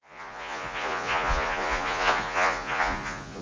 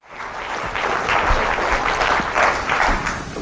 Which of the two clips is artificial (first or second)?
first